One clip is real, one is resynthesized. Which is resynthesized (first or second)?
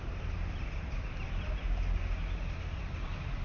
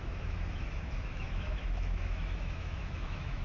second